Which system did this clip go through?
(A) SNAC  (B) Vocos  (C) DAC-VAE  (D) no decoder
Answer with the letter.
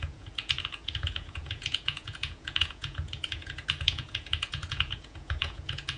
B